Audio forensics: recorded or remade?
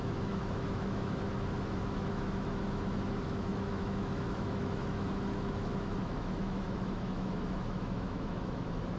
remade